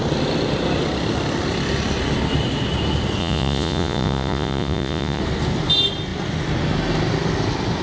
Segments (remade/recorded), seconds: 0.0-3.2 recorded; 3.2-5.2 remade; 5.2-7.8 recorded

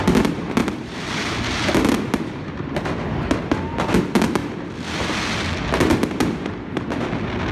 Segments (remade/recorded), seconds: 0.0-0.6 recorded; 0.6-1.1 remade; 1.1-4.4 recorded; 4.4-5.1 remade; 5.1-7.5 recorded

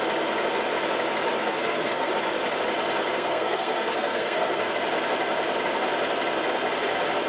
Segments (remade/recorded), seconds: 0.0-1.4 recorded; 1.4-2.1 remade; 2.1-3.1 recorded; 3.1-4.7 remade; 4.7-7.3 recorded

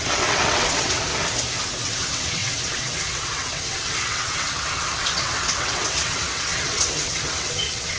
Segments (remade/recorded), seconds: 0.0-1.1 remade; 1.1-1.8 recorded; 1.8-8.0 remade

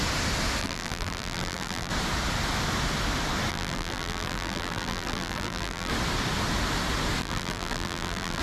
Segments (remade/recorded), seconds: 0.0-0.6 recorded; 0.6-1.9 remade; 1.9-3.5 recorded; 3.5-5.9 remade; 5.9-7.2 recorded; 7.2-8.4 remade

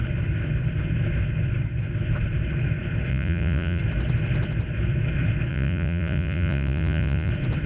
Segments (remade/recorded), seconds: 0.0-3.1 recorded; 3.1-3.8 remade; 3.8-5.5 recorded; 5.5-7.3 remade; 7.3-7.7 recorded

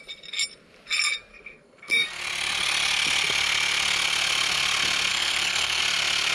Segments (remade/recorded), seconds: 0.0-1.3 recorded; 1.3-2.2 remade; 2.2-5.1 recorded; 5.1-5.8 remade; 5.8-6.3 recorded

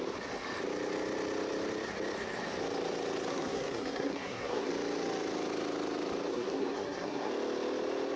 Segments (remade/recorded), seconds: 0.0-3.3 recorded; 3.3-4.7 remade; 4.7-6.3 recorded; 6.3-7.3 remade; 7.3-8.2 recorded